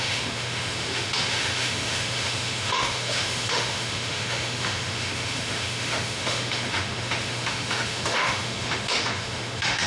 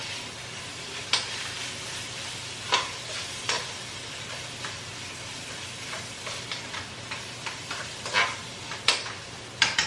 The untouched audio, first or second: second